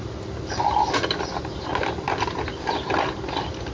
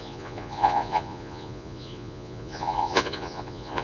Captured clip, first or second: first